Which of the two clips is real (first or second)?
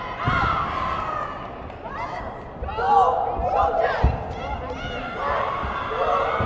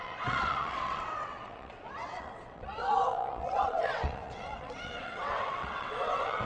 first